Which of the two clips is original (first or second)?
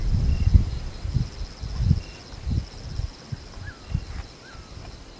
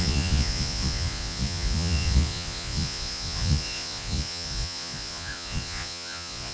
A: first